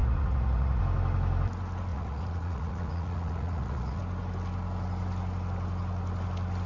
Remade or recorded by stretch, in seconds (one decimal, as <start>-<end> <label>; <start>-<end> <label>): 0.0-0.8 remade; 0.8-1.9 recorded; 1.9-4.0 remade; 4.0-6.7 recorded

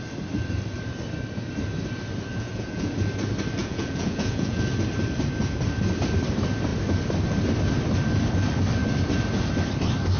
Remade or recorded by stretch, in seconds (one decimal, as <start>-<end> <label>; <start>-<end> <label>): 0.0-2.3 recorded; 2.3-2.9 remade; 2.9-3.6 recorded; 3.6-4.6 remade; 4.6-10.2 recorded

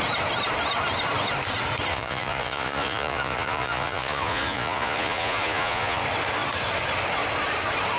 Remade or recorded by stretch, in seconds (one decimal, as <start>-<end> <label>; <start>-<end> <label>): 0.0-1.9 recorded; 1.9-6.0 remade; 6.0-8.0 recorded

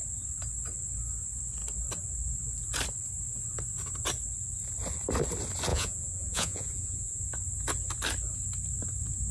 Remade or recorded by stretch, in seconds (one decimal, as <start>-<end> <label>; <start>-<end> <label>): 0.0-5.7 recorded; 5.7-7.2 remade; 7.2-9.3 recorded

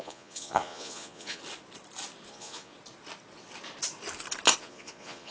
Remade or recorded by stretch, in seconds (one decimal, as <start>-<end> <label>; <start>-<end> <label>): 0.0-1.4 remade; 1.4-2.3 recorded; 2.3-2.7 remade; 2.7-4.6 recorded; 4.6-5.3 remade

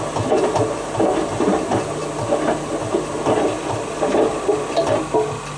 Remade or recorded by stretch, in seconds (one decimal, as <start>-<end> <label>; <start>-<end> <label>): 0.0-5.6 recorded